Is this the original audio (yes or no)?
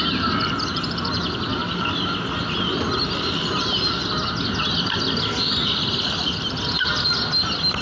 yes